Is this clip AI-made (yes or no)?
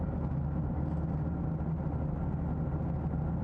no